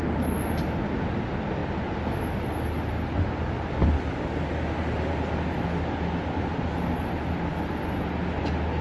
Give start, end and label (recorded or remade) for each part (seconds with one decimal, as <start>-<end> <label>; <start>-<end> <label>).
0.0-8.8 recorded